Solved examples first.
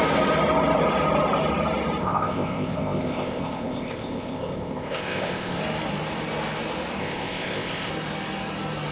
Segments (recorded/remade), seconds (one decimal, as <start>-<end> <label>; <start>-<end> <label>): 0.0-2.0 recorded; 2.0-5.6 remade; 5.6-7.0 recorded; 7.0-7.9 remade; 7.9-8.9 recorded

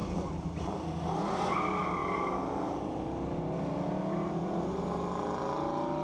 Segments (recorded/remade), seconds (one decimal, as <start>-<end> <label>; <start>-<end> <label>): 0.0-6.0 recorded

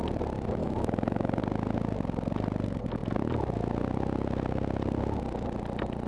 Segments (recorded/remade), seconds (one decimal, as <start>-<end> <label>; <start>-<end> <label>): 0.0-0.6 recorded; 0.6-1.4 remade; 1.4-6.1 recorded

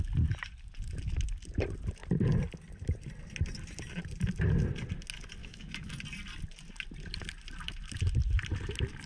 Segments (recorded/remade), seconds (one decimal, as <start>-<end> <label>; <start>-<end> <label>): 0.0-5.4 recorded; 5.4-5.9 remade; 5.9-9.1 recorded

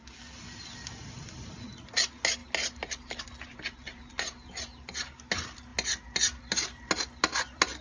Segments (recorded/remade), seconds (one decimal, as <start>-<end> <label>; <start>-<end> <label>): 0.0-7.8 recorded